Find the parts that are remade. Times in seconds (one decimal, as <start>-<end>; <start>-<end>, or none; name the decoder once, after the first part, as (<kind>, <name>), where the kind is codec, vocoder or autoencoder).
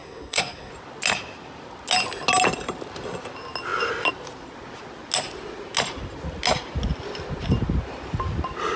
0.0-0.7 (codec, SNAC)